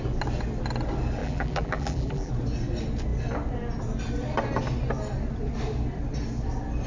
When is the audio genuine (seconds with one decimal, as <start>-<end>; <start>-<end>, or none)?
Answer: 0.0-1.2; 2.3-6.9